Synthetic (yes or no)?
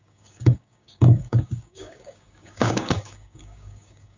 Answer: yes